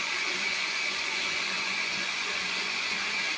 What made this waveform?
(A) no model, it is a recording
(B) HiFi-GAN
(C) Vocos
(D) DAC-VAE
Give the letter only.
C